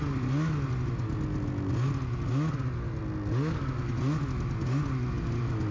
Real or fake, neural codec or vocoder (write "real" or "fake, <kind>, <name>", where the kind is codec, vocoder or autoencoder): real